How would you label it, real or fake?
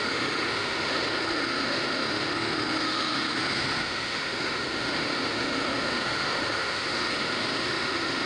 fake